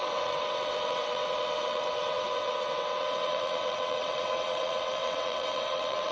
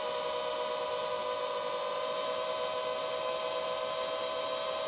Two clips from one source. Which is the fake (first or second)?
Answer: first